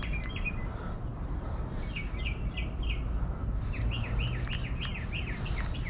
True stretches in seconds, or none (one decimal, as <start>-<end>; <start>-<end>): 0.0-5.9